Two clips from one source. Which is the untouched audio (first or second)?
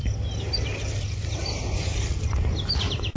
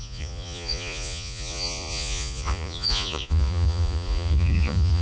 first